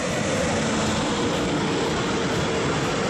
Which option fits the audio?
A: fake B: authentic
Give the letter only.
B